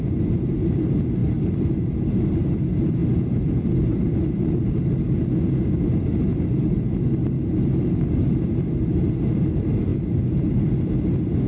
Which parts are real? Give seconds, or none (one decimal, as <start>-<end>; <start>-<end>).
0.0-1.2; 1.8-3.0; 5.3-6.3; 8.3-9.9